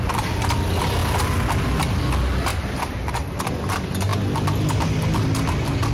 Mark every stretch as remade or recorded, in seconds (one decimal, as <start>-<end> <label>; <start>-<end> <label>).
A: 0.0-2.5 recorded; 2.5-3.3 remade; 3.3-5.9 recorded